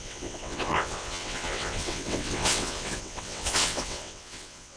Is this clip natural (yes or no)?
no